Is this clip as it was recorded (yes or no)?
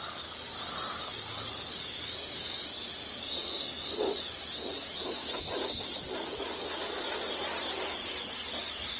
yes